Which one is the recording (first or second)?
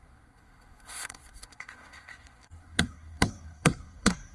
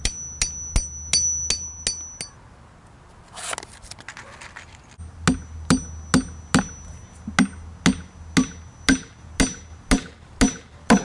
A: second